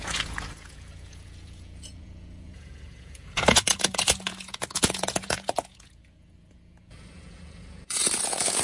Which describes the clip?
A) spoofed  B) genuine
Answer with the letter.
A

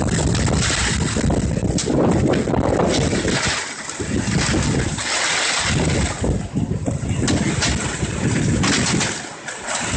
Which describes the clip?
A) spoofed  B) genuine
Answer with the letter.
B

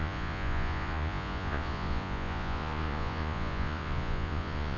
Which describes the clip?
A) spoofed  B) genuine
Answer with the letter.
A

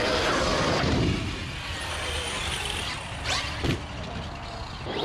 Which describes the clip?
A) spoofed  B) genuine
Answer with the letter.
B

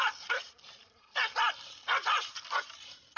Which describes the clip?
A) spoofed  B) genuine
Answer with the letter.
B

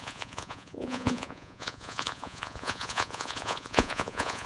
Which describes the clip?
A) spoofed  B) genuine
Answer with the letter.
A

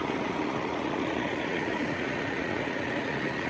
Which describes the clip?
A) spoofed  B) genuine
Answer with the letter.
A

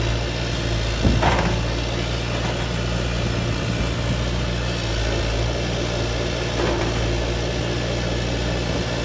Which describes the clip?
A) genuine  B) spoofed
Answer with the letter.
A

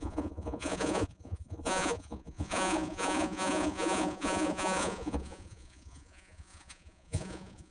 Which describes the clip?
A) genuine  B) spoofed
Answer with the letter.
B